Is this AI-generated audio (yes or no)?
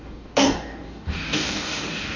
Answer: yes